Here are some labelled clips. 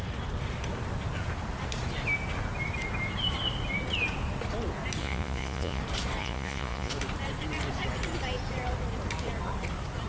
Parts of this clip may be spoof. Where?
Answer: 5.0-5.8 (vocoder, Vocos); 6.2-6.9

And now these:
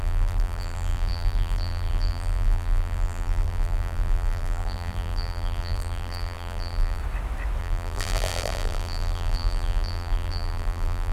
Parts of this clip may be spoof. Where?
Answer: 0.0-7.0 (vocoder, BigVGAN v2); 7.6-11.1

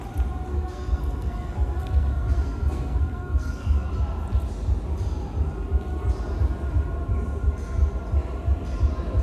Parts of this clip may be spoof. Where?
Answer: 0.5-3.9 (codec, SNAC)

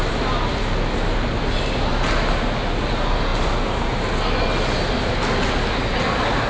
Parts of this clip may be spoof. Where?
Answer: none